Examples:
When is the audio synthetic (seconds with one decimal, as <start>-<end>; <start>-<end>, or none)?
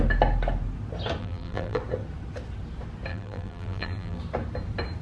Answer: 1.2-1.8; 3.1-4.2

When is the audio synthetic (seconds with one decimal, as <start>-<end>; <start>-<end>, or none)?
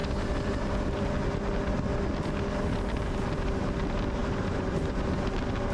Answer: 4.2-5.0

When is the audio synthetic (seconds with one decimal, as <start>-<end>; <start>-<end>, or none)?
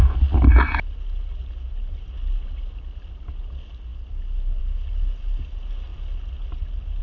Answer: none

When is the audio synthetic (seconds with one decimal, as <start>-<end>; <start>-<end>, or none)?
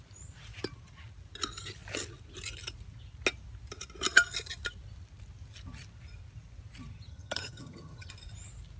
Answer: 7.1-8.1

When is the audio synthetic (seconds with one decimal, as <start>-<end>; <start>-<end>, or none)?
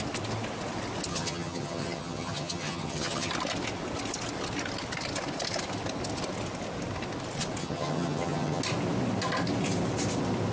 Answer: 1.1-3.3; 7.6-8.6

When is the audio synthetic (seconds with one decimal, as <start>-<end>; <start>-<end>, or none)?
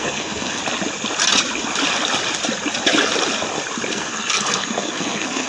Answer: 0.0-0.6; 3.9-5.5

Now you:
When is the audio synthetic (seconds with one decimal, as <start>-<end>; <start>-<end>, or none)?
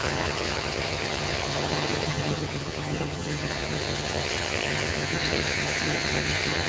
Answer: 0.0-6.7